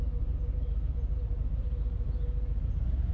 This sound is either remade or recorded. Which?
recorded